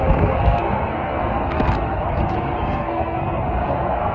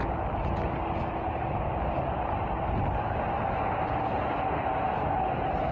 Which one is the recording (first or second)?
second